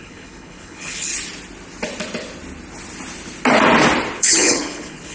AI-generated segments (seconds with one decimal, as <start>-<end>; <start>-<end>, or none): 0.0-1.1; 4.2-5.1